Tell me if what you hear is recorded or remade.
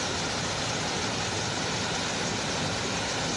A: recorded